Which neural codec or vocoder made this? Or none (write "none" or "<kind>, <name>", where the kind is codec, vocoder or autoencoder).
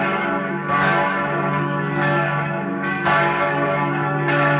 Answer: codec, DAC